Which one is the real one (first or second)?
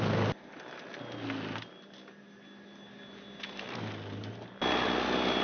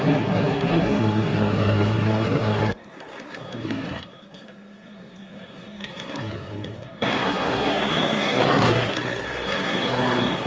first